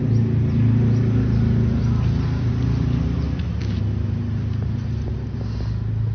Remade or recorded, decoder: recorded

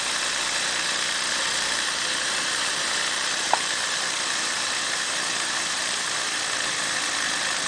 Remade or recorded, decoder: remade, vocoder, BigVGAN v2